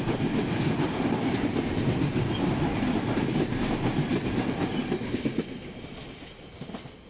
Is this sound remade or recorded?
recorded